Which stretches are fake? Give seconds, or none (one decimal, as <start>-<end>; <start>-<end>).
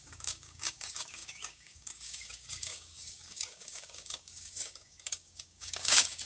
0.0-6.3